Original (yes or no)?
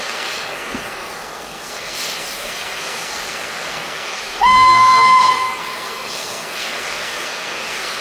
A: no